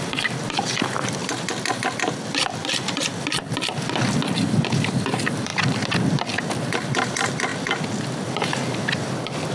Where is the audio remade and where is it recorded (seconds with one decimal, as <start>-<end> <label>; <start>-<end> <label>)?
0.0-1.2 remade; 1.2-1.7 recorded; 1.7-3.1 remade; 3.1-4.8 recorded; 4.8-5.5 remade; 5.5-6.4 recorded; 6.4-7.5 remade; 7.5-9.5 recorded